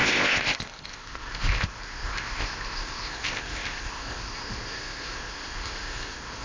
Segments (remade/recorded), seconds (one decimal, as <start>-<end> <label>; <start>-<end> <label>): 0.0-6.4 remade